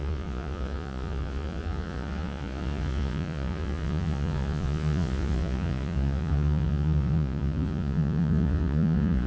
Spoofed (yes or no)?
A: yes